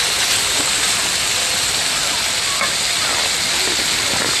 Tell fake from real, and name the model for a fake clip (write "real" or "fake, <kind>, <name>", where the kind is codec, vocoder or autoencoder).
real